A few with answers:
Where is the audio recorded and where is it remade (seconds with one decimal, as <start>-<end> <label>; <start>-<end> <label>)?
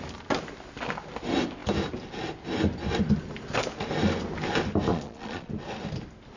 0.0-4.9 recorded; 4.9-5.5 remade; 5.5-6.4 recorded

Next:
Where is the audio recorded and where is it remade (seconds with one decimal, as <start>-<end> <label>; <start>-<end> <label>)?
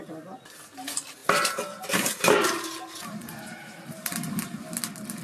0.0-1.2 recorded; 1.2-4.3 remade; 4.3-5.2 recorded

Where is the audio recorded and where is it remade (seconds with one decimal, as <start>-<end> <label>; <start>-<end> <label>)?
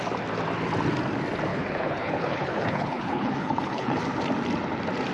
0.0-1.5 recorded; 1.5-4.0 remade; 4.0-5.1 recorded